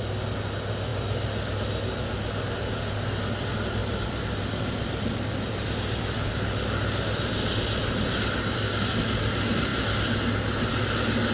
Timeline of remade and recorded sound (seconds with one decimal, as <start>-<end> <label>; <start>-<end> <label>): 0.0-11.3 recorded